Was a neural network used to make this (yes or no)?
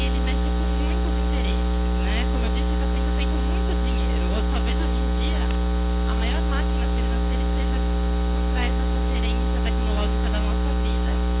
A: no